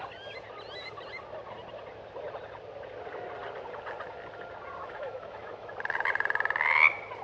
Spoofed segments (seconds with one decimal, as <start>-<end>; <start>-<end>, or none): 4.8-5.7